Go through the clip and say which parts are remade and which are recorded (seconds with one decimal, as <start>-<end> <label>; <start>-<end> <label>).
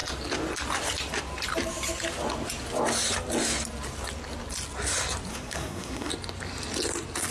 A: 0.0-5.3 recorded; 5.3-6.1 remade; 6.1-7.3 recorded